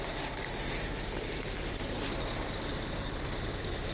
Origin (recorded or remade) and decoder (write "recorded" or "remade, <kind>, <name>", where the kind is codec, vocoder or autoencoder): recorded